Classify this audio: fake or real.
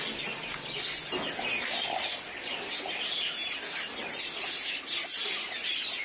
real